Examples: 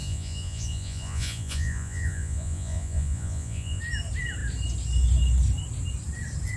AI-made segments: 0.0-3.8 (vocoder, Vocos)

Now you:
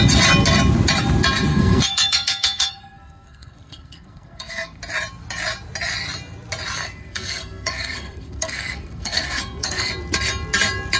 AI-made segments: 1.5-4.8 (codec, SNAC); 6.8-9.9